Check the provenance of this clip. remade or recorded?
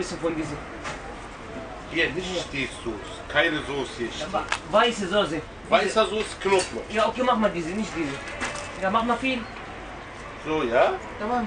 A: recorded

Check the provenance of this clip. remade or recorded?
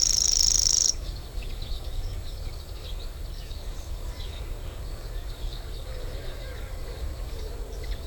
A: remade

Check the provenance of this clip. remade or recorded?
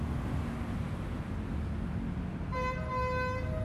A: recorded